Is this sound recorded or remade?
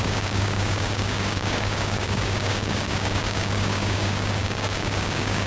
remade